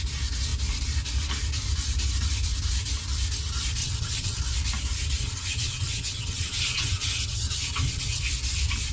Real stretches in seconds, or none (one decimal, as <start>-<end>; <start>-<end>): 0.0-3.8; 4.4-5.2; 8.2-8.9